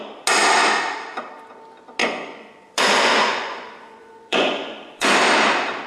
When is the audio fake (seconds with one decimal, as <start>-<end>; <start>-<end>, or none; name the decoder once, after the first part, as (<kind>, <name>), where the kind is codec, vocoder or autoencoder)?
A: 2.0-5.1 (vocoder, Vocos)